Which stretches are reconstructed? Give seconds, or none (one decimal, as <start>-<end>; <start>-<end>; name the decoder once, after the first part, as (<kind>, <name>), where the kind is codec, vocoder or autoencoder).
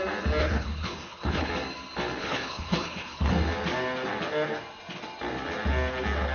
0.4-1.5 (codec, HILCodec); 2.2-3.3